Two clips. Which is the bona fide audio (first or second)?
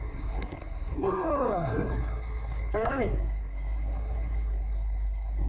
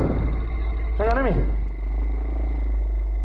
second